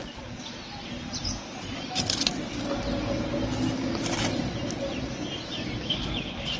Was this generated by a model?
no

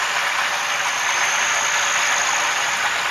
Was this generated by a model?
no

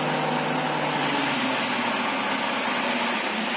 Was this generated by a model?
no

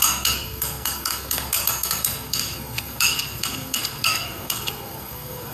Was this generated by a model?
yes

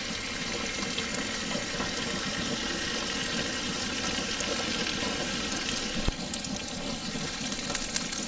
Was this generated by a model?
no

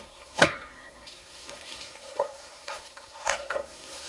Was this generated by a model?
yes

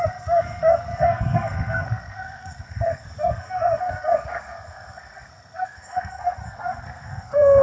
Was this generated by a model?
yes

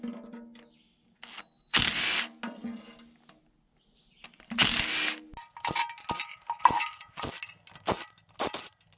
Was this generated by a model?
no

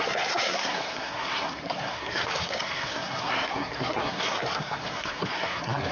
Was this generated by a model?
yes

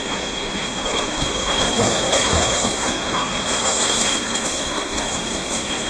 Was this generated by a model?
yes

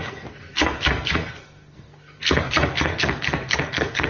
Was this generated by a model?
yes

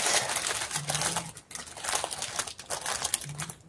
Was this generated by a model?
no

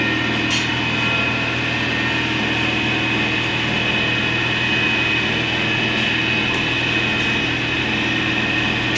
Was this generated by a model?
no